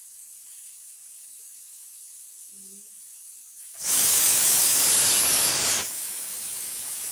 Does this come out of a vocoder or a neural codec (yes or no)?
yes